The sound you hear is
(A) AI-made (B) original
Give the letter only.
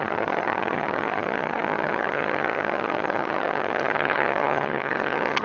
A